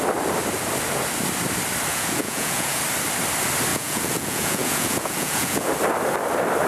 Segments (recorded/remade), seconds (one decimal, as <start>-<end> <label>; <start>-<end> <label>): 0.0-1.9 recorded; 1.9-2.8 remade; 2.8-3.7 recorded; 3.7-5.7 remade; 5.7-6.7 recorded